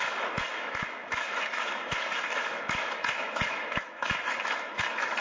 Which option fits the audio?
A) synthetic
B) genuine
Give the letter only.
A